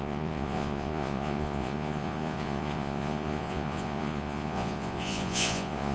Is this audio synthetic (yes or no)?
yes